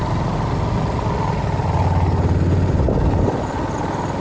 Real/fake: real